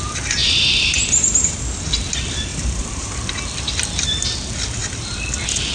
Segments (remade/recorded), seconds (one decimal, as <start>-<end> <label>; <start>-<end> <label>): 0.0-0.4 recorded; 0.4-0.9 remade; 0.9-2.5 recorded; 2.5-3.2 remade; 3.2-5.7 recorded